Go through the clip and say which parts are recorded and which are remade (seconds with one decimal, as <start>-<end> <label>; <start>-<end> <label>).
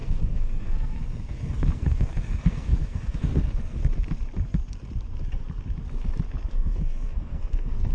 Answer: 0.0-3.8 remade; 3.8-6.5 recorded; 6.5-7.9 remade